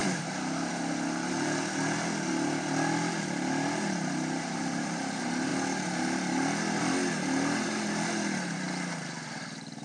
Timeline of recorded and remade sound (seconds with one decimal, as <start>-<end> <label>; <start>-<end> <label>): 0.0-9.8 recorded